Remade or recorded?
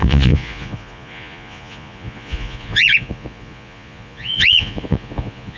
remade